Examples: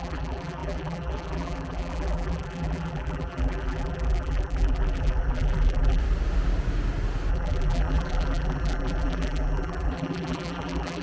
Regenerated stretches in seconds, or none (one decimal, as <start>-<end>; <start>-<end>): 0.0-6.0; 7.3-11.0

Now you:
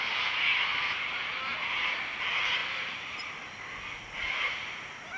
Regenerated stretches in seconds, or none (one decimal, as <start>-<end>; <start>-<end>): none

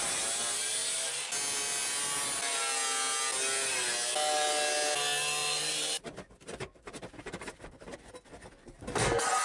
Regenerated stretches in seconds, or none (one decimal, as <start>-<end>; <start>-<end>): 5.4-8.1